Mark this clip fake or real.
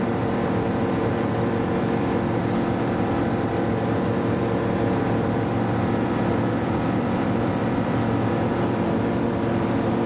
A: fake